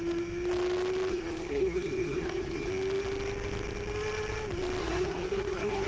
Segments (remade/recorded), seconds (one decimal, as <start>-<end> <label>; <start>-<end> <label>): 0.0-1.1 recorded; 1.1-2.7 remade; 2.7-4.8 recorded; 4.8-5.9 remade